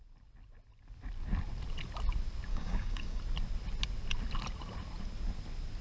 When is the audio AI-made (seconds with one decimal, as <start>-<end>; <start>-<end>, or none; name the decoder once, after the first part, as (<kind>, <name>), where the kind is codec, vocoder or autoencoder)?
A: 2.5-3.2 (codec, DAC)